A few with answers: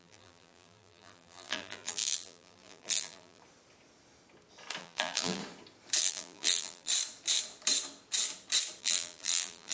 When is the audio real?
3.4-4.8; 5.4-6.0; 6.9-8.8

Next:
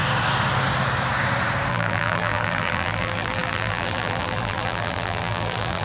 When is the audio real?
0.0-1.7

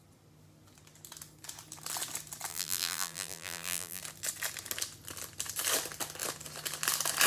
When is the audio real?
0.0-2.5; 4.0-7.3

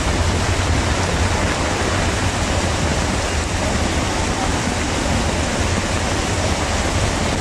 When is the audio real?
0.0-2.9; 3.9-4.5; 6.8-7.4

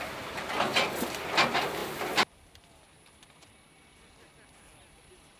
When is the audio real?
0.0-0.7; 1.2-5.4

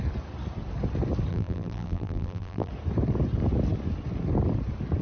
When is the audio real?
0.0-1.3; 2.7-5.0